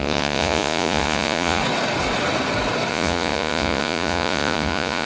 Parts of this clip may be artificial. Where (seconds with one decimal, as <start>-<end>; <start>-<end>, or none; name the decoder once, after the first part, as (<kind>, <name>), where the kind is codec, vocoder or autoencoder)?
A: 0.0-1.6 (vocoder, Vocos); 2.9-5.1